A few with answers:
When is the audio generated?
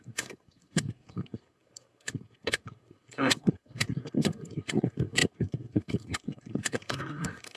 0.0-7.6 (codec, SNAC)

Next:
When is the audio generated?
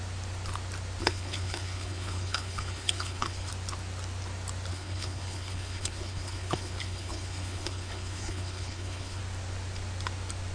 1.0-3.5 (codec, HILCodec); 4.7-9.2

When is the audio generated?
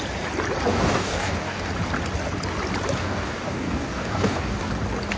0.7-1.7 (codec, DAC); 3.0-4.7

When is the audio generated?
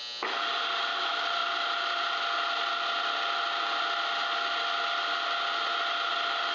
none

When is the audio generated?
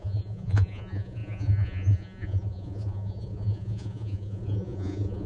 0.0-5.3 (vocoder, Vocos)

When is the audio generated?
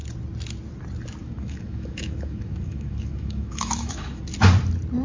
1.2-4.2 (autoencoder, DAC-VAE)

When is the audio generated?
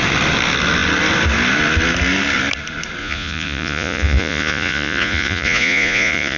3.0-6.4 (vocoder, Vocos)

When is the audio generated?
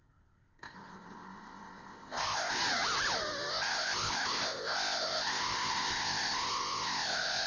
0.0-2.6 (codec, ZipCodec); 3.5-7.5